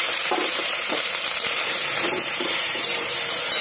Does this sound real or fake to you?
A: fake